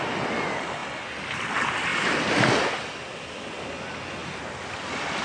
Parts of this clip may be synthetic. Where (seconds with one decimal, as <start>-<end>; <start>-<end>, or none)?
none